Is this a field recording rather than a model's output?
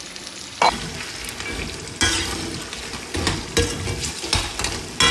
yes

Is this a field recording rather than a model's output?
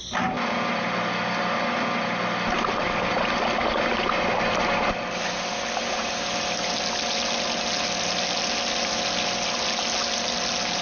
yes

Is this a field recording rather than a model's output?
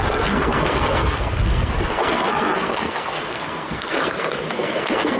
no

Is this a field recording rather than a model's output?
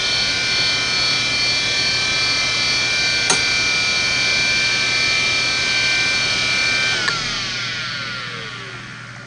yes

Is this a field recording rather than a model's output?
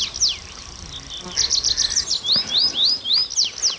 yes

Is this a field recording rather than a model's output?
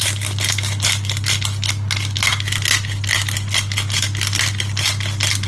yes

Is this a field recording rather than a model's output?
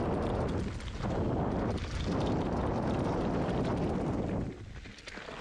yes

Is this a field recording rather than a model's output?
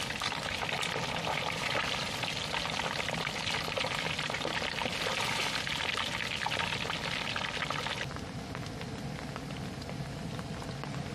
yes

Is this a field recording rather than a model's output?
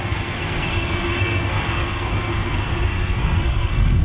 no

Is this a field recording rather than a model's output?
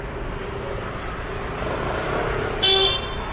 yes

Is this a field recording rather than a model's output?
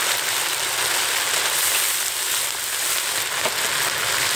yes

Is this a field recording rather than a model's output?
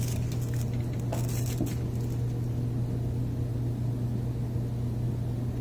yes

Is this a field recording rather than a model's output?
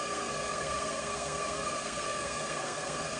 no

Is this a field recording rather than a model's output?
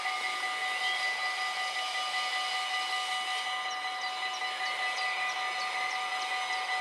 yes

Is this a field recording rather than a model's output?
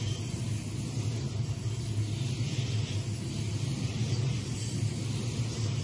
yes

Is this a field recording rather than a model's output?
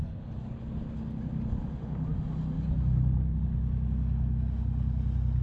yes